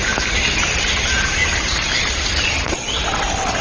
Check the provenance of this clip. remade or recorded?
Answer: recorded